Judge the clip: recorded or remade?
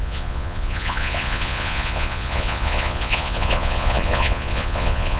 remade